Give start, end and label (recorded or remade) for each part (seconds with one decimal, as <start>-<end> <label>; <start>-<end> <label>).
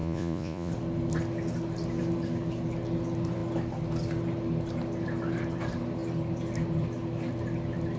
0.0-0.7 remade; 0.7-8.0 recorded